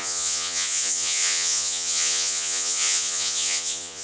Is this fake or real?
fake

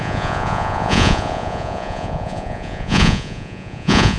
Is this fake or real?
fake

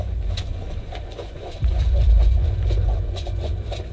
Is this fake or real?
fake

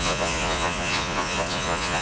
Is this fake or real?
fake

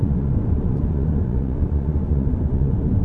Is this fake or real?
fake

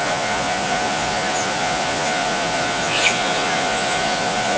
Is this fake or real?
fake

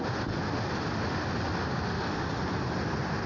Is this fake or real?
real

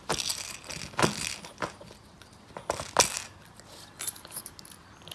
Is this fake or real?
real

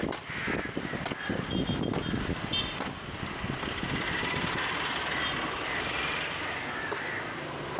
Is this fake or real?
real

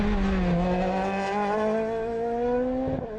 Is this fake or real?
real